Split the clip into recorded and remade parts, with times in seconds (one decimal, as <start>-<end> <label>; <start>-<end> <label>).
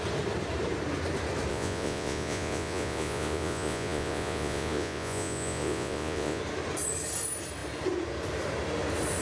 0.0-1.5 recorded; 1.5-6.4 remade; 6.4-9.2 recorded